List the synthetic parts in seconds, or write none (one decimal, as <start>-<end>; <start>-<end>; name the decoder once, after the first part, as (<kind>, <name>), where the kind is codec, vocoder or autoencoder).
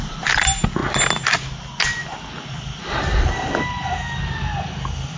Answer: none